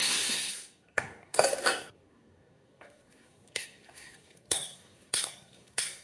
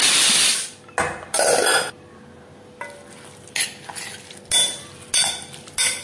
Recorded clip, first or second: second